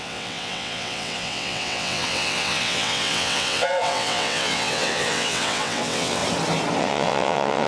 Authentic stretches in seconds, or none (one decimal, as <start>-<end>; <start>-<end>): 6.2-6.8

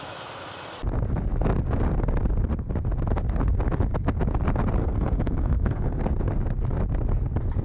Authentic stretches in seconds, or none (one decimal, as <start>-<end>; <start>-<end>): 0.0-4.8; 6.0-7.6

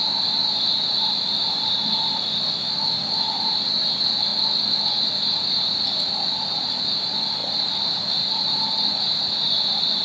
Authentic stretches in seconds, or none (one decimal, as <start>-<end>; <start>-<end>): 4.3-5.1

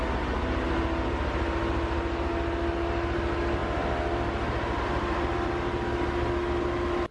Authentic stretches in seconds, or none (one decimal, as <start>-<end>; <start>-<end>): 0.0-7.1

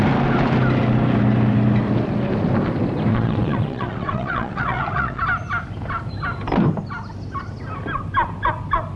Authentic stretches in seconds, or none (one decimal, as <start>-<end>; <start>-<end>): 0.0-3.1; 5.2-9.0

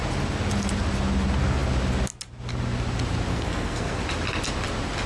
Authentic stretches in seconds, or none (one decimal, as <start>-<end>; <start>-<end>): 0.0-3.3; 4.0-5.1